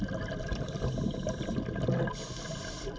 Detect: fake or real real